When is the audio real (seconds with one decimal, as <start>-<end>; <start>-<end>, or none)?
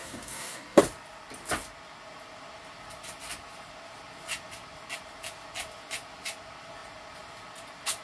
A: 0.8-8.0